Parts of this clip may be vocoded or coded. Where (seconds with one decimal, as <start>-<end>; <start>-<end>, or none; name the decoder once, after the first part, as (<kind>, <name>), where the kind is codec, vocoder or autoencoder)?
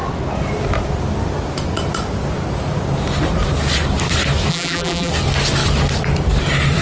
4.5-5.1 (vocoder, BigVGAN v2)